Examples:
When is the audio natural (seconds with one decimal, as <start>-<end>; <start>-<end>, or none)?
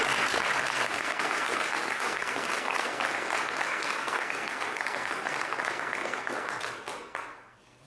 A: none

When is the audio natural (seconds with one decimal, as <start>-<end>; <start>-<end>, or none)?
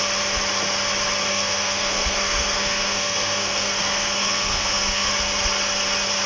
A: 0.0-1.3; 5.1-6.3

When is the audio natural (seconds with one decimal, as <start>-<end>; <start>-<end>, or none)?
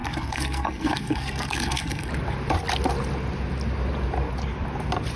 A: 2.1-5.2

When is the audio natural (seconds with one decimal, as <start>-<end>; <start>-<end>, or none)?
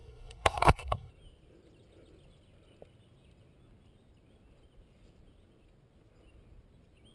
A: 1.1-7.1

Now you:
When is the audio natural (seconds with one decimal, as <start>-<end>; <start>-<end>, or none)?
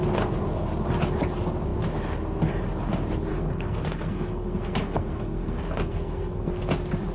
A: 0.0-3.3; 6.5-7.1